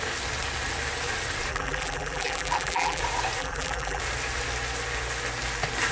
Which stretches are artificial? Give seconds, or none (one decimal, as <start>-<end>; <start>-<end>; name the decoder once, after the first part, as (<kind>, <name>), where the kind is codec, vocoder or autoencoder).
1.5-3.0 (vocoder, BigVGAN v2); 3.4-4.0